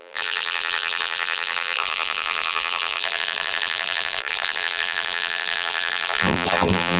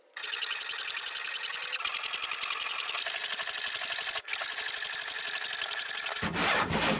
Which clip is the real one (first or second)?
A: second